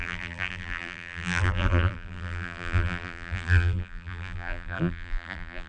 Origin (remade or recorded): remade